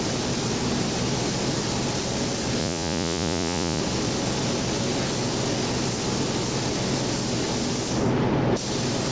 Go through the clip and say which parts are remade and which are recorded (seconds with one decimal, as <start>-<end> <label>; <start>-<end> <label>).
0.0-2.6 recorded; 2.6-3.8 remade; 3.8-9.1 recorded